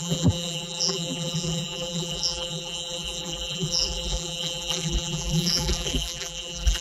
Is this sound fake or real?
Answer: fake